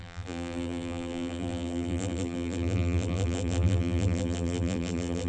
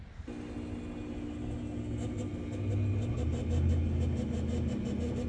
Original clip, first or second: second